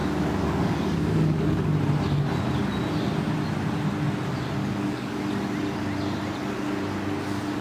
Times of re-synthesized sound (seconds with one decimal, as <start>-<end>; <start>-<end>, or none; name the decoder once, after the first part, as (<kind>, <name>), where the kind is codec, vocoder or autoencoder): 0.0-1.7 (codec, DAC); 4.6-5.2